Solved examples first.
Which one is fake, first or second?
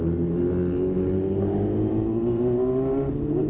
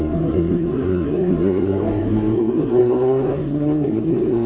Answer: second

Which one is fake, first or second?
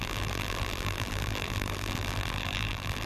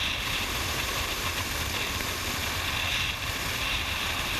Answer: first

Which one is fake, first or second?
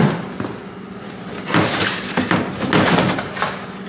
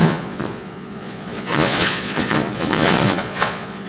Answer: second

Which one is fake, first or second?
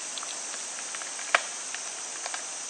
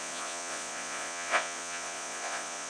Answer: second